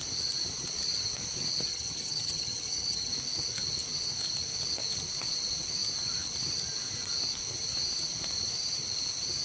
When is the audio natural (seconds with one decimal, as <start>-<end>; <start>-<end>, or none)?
0.0-1.7; 3.1-9.4